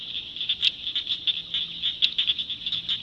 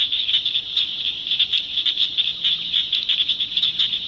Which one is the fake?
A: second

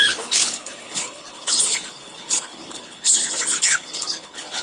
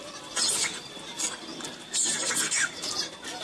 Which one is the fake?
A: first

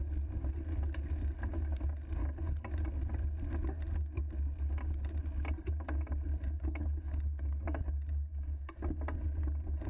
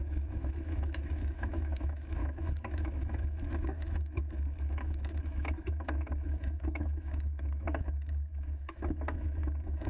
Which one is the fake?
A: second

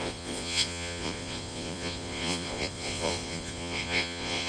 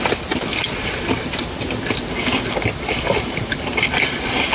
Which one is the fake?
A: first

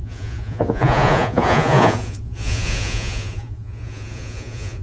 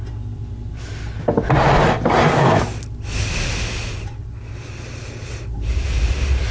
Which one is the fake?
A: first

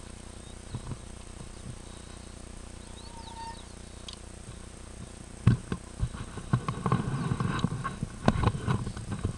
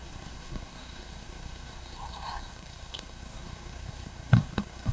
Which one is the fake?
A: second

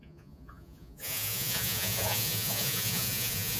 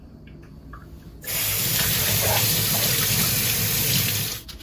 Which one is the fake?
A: first